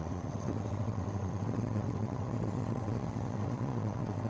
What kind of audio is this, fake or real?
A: fake